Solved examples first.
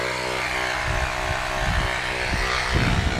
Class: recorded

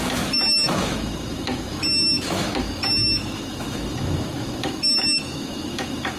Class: remade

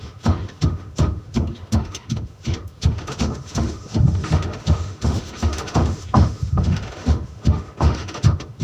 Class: remade